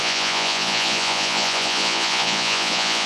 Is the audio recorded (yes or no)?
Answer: no